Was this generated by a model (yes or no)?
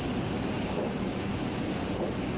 no